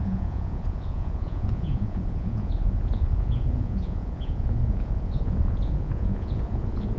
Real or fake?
fake